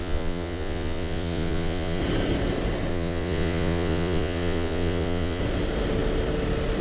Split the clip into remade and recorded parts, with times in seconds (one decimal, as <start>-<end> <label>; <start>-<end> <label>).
0.0-2.0 remade; 2.0-2.9 recorded; 2.9-5.4 remade; 5.4-6.8 recorded